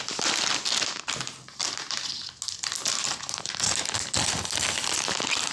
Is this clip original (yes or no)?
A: yes